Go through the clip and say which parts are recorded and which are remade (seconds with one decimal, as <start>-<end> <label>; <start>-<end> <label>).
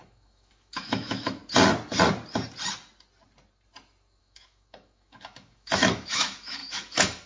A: 0.0-1.4 remade; 1.4-4.2 recorded; 4.2-7.3 remade